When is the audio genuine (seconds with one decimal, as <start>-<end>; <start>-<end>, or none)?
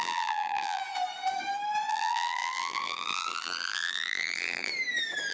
0.8-1.9; 4.7-5.3